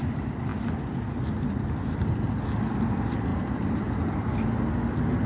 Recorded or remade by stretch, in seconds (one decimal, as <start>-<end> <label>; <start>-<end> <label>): 0.0-3.3 recorded; 3.3-4.1 remade; 4.1-5.3 recorded